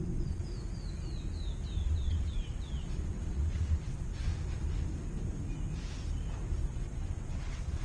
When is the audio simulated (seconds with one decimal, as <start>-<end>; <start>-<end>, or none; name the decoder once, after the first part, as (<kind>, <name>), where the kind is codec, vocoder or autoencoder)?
0.0-0.4 (vocoder, WaveNeXt); 1.8-4.3; 6.6-7.8